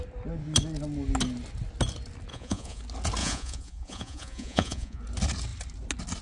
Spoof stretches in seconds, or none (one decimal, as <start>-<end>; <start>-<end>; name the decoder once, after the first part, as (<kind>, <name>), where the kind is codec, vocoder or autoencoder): 2.3-2.8 (vocoder, Vocos); 3.2-5.0